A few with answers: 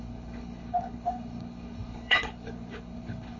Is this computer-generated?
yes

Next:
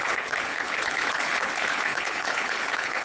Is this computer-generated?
yes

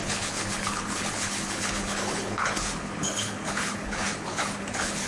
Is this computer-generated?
yes